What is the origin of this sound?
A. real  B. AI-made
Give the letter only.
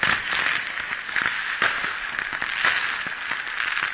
A